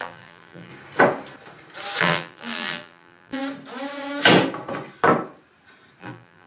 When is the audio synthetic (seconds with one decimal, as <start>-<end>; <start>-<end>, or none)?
0.0-0.7; 2.0-3.4; 6.0-6.5